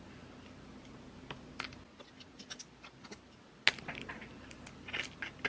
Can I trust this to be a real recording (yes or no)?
yes